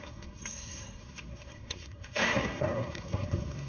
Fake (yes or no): yes